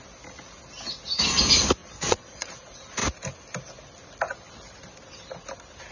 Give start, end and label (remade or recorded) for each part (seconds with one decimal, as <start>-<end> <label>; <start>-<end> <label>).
0.0-1.8 recorded; 1.8-2.5 remade; 2.5-5.9 recorded